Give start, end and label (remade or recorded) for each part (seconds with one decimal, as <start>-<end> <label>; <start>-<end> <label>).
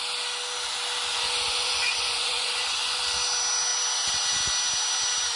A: 0.0-1.1 recorded; 1.1-3.0 remade; 3.0-5.4 recorded